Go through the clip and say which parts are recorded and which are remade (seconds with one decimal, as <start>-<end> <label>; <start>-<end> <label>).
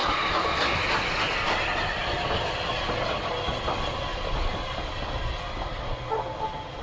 0.0-1.4 remade; 1.4-4.1 recorded; 4.1-5.1 remade; 5.1-6.8 recorded